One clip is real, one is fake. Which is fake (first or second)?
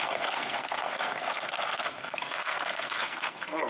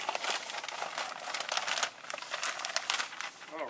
first